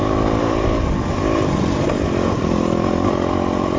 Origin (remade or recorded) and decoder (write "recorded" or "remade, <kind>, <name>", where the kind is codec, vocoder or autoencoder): remade, vocoder, BigVGAN v2